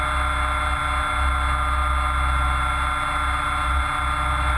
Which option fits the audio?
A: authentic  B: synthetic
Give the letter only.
A